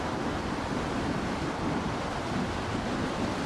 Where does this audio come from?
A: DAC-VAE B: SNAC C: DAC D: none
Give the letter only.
D